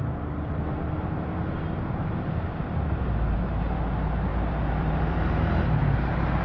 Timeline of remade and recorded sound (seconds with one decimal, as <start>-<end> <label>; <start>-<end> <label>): 0.0-4.3 recorded; 4.3-5.8 remade; 5.8-6.4 recorded